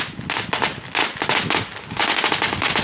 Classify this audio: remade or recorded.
recorded